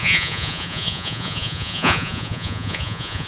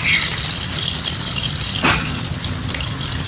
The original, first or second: second